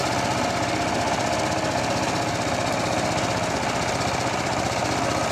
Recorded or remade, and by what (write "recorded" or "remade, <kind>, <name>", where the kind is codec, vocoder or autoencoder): recorded